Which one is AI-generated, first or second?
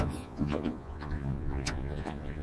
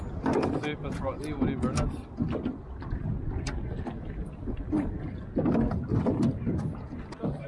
first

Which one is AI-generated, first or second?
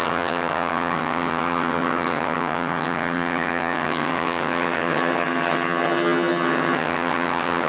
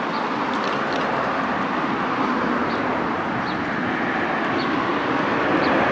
first